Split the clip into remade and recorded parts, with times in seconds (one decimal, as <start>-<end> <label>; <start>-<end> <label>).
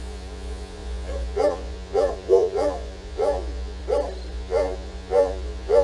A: 0.0-3.8 remade; 3.8-4.3 recorded; 4.3-5.8 remade